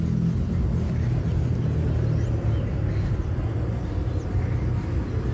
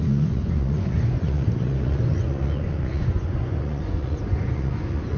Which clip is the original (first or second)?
first